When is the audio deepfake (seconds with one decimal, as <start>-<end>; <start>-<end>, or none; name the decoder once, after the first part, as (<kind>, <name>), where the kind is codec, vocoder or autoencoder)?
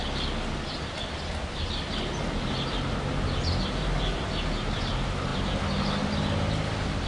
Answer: none